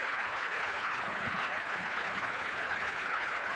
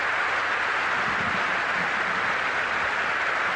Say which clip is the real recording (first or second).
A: second